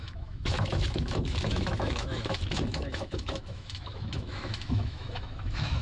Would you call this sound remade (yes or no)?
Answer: yes